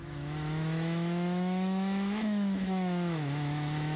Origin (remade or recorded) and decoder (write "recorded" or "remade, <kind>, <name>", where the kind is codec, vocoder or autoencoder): remade, autoencoder, DAC-VAE